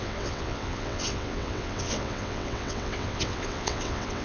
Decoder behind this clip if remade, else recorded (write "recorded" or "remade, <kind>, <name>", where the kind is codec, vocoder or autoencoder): remade, vocoder, WaveNeXt